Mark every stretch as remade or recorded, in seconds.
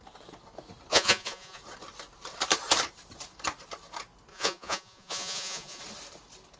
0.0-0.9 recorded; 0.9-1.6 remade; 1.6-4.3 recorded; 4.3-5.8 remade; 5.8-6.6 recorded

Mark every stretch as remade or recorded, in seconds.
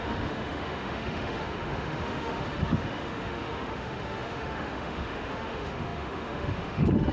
0.0-7.1 remade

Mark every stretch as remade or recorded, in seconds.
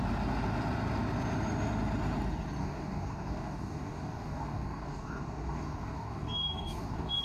0.0-2.6 recorded; 2.6-7.2 remade